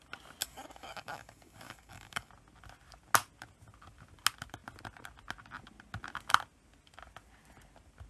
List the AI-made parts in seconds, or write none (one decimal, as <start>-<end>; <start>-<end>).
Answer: 0.4-2.3